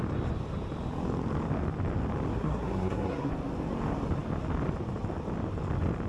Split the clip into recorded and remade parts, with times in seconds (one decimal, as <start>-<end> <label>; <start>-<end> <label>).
0.0-2.3 recorded; 2.3-3.3 remade; 3.3-6.1 recorded